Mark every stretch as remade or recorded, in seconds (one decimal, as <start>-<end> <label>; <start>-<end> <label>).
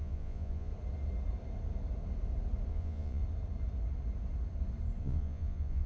0.0-0.7 remade; 0.7-2.7 recorded; 2.7-3.2 remade; 3.2-5.0 recorded; 5.0-5.9 remade